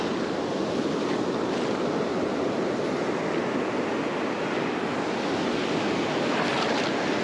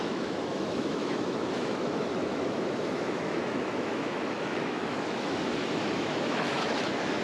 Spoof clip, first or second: second